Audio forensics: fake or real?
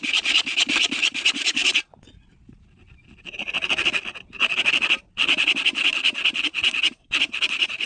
real